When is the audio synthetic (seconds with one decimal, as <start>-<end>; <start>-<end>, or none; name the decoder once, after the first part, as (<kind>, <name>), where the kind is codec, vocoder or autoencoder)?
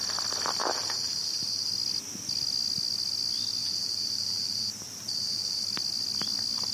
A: 0.6-1.7 (vocoder, BigVGAN v2); 3.6-5.6